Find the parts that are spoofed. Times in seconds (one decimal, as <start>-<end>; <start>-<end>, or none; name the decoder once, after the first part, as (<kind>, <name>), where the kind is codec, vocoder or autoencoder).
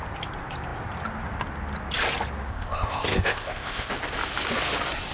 2.5-3.9 (codec, ZipCodec)